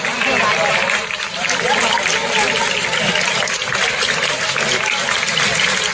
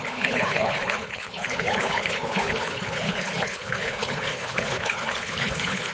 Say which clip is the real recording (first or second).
first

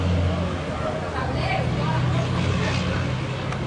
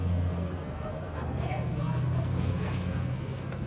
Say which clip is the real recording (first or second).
first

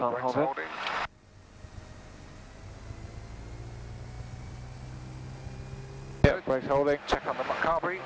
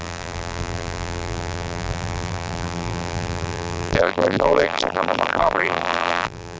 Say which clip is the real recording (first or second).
first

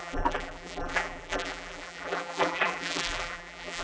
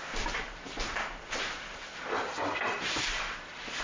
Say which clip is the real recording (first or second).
second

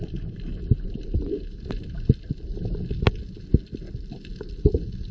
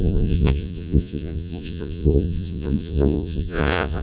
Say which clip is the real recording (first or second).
first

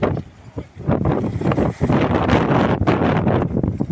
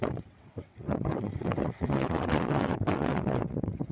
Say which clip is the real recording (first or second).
first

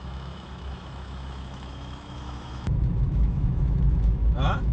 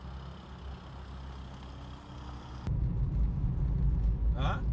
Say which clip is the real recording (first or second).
second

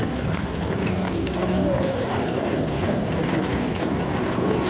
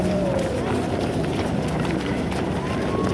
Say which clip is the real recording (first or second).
second